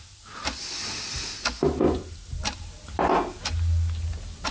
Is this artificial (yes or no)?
no